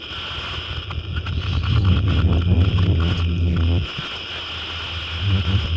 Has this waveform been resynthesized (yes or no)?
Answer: no